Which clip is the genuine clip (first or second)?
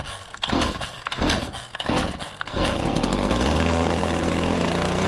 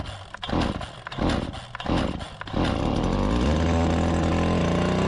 second